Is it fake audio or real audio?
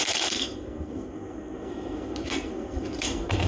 fake